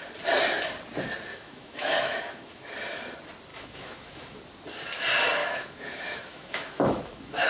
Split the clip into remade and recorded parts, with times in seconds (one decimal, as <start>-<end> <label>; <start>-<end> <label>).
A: 0.0-1.3 recorded; 1.3-2.6 remade; 2.6-3.5 recorded; 3.5-4.4 remade; 4.4-5.4 recorded; 5.4-7.5 remade